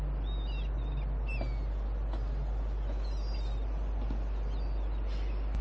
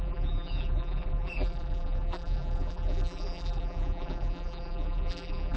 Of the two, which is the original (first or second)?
first